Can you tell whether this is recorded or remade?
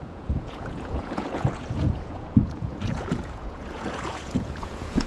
remade